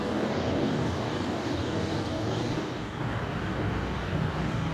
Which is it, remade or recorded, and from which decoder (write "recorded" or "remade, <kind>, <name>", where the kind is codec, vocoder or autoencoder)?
remade, codec, DAC